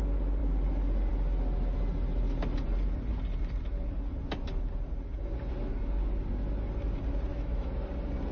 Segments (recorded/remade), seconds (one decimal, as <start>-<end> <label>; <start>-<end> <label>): 0.0-7.3 recorded; 7.3-7.9 remade; 7.9-8.3 recorded